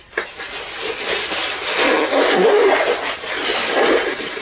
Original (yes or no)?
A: yes